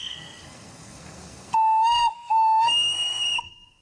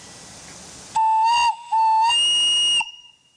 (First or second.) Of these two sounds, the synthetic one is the first